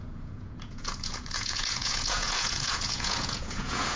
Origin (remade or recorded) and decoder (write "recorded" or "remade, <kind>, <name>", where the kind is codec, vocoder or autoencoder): remade, vocoder, Vocos